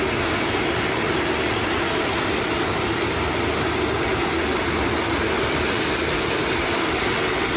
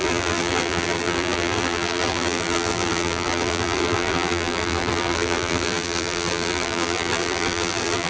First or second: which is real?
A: first